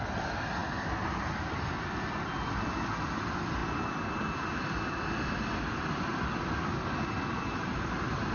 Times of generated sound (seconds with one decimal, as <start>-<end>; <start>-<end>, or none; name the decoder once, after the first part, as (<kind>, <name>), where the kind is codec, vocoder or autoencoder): none